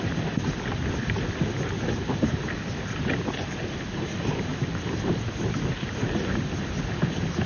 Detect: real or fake real